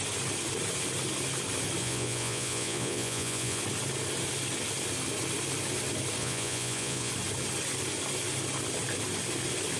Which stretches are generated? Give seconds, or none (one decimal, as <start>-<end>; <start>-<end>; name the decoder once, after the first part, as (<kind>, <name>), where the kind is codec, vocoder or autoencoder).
1.8-3.6 (vocoder, Vocos); 6.2-7.1